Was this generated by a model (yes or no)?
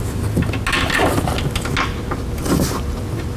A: no